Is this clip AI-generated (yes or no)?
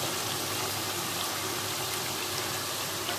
no